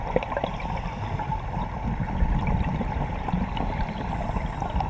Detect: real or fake real